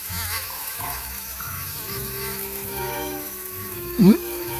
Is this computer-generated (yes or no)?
yes